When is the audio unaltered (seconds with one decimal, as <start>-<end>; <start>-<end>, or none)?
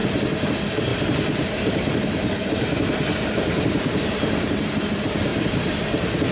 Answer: 0.5-0.9; 4.7-5.3